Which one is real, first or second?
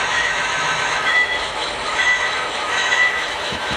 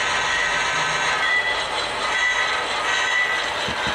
second